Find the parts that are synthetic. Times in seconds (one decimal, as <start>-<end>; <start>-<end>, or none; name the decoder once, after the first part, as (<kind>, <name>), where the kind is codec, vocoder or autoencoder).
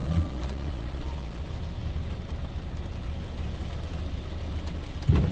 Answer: 0.0-1.4 (vocoder, Vocos)